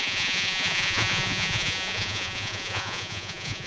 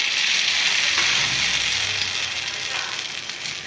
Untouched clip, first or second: second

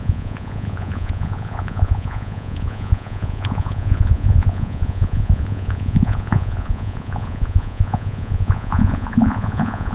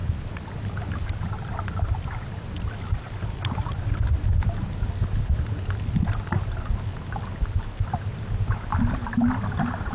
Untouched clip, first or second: second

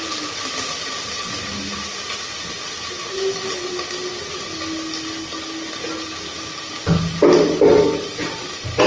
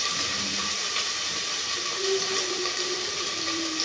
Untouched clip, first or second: first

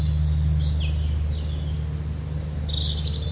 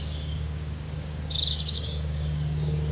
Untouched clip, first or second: first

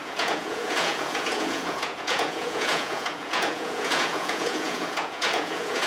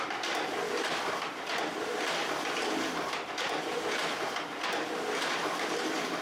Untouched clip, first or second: second